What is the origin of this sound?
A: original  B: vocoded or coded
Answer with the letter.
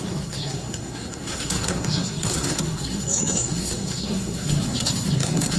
B